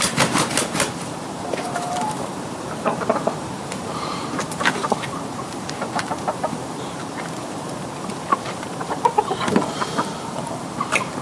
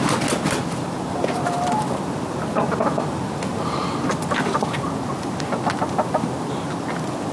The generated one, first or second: first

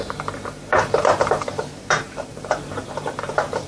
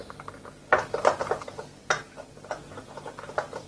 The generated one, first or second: first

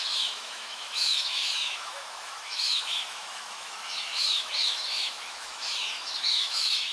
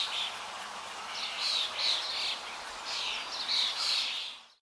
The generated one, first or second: first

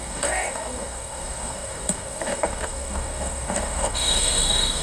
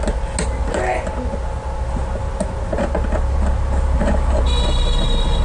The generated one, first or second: first